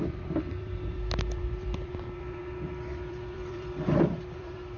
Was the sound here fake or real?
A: fake